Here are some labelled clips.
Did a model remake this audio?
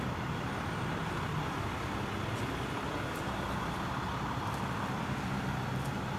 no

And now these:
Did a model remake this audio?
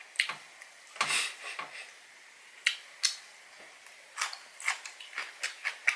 no